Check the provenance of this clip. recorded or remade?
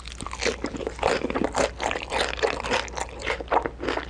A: recorded